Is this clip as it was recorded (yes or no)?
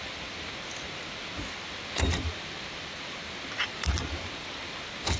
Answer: yes